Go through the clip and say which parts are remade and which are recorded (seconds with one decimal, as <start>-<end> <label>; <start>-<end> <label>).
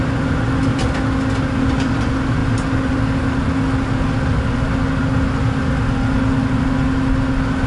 0.0-7.7 recorded